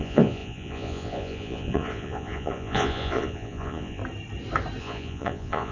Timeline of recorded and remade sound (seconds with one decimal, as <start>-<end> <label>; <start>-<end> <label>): 0.0-4.0 remade; 4.0-4.8 recorded; 4.8-5.7 remade